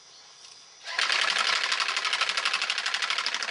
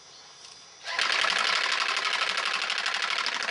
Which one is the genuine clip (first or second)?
second